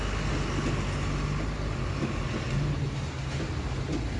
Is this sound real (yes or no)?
yes